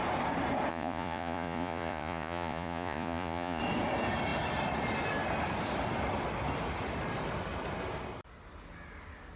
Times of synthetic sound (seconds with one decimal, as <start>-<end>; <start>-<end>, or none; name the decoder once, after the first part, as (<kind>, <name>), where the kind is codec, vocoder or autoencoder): 0.7-3.6 (vocoder, Vocos)